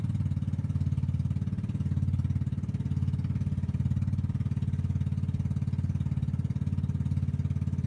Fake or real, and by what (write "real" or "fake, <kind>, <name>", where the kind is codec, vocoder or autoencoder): real